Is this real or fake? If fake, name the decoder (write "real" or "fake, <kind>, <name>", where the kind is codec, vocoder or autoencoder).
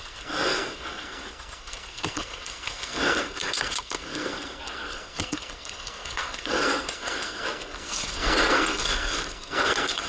fake, codec, SNAC